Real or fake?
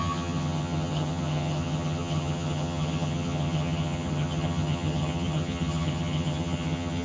fake